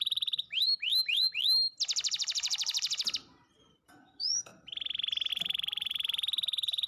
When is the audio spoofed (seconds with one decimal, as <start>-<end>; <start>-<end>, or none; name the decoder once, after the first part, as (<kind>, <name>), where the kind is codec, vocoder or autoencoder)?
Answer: 0.0-1.4 (vocoder, BigVGAN v2); 2.1-4.5; 5.3-6.9